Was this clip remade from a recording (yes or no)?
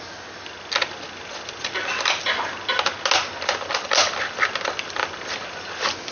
no